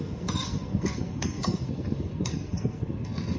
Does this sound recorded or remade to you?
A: remade